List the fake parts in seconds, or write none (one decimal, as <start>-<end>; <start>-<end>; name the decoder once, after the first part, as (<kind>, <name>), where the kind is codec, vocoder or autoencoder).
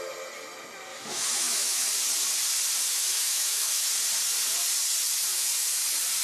0.9-1.9 (autoencoder, DAC-VAE); 2.9-3.9; 5.3-5.8